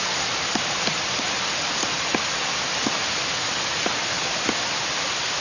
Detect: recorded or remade recorded